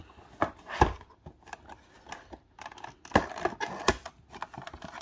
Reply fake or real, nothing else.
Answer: real